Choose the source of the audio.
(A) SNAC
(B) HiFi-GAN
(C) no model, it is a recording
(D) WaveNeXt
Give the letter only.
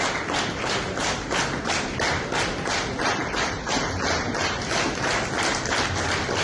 C